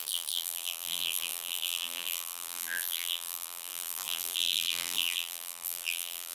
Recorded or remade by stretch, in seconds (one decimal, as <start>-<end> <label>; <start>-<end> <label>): 0.0-6.3 remade